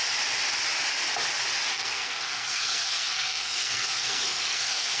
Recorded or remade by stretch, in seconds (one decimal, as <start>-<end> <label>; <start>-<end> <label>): 0.0-1.7 recorded; 1.7-5.0 remade